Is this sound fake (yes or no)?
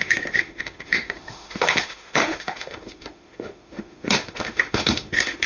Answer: yes